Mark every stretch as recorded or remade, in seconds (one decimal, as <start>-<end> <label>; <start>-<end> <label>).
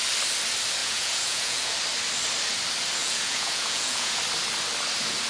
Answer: 0.0-0.8 recorded; 0.8-1.7 remade; 1.7-3.0 recorded; 3.0-4.2 remade; 4.2-5.3 recorded